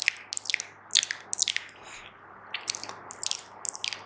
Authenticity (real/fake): real